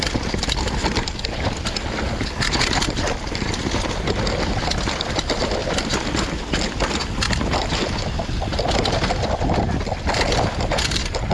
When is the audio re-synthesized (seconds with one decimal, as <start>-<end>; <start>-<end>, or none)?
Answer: 5.6-6.4